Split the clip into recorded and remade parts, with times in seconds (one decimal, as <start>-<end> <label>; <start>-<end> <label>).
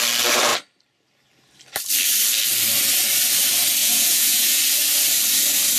0.0-3.8 recorded; 3.8-4.6 remade; 4.6-5.8 recorded